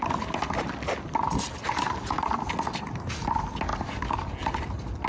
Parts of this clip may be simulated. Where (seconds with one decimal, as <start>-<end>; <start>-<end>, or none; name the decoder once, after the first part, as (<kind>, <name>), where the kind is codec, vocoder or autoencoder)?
none